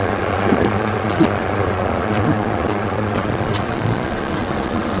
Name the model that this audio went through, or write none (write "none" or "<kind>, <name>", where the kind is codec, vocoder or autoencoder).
vocoder, Vocos